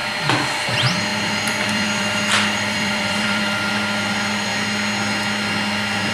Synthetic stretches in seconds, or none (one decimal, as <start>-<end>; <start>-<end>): 0.6-4.5